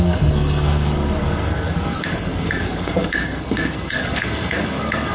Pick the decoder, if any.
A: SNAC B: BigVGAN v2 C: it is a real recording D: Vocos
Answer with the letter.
A